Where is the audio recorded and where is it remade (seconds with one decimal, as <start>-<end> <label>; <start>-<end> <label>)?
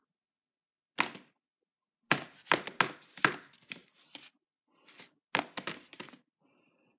0.0-7.0 recorded